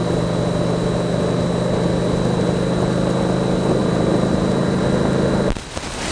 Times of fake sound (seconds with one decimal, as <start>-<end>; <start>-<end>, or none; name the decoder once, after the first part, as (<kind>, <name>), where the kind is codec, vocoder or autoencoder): 3.8-4.8 (vocoder, BigVGAN v2)